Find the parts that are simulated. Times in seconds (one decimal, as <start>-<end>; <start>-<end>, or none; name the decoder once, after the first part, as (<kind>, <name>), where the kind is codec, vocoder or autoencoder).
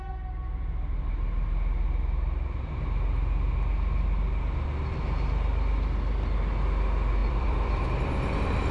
7.2-7.8 (vocoder, BigVGAN v2)